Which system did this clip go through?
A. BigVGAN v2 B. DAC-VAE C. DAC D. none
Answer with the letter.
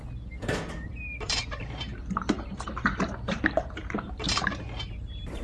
A